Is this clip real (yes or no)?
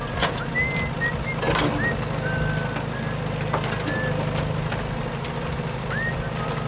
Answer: yes